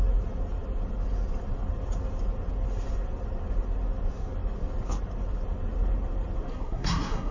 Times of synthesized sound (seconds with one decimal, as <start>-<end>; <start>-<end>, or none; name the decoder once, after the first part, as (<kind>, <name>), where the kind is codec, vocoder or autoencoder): 6.5-7.3 (codec, SNAC)